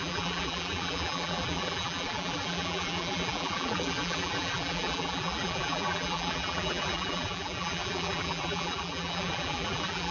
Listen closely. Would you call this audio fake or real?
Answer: fake